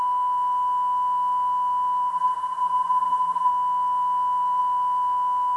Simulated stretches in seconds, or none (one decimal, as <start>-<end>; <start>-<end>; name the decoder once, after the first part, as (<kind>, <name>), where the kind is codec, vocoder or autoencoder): 2.1-3.5 (vocoder, BigVGAN v2)